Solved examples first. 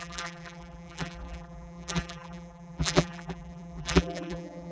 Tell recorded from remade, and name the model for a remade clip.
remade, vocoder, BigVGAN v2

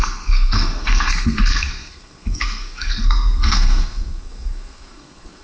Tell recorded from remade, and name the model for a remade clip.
remade, codec, SNAC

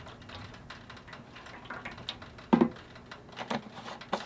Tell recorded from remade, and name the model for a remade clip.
recorded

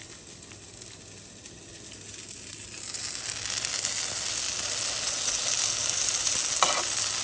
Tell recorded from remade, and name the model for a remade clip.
recorded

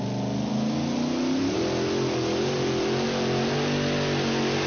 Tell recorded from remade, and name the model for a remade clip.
recorded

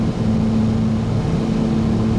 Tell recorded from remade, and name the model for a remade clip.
recorded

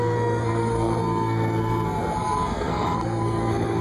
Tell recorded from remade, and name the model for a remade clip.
remade, codec, SNAC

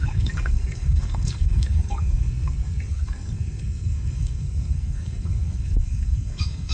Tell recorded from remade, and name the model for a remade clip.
remade, codec, SNAC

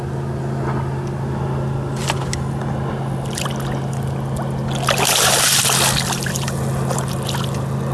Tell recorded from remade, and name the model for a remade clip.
recorded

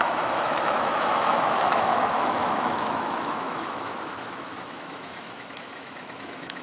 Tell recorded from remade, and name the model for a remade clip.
remade, autoencoder, DAC-VAE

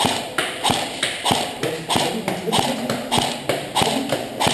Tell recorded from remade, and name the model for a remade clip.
remade, vocoder, BigVGAN v2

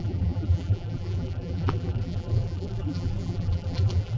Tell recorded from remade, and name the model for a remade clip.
remade, vocoder, BigVGAN v2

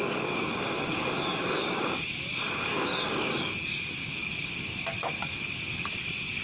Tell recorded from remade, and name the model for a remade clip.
remade, codec, DAC